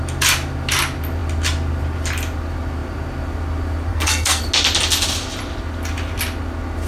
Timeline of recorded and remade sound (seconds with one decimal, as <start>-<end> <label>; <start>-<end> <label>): 0.0-3.9 recorded; 3.9-4.4 remade; 4.4-6.9 recorded